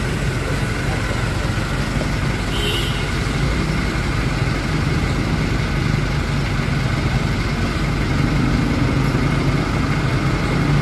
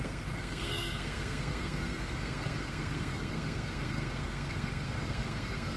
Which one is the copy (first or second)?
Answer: second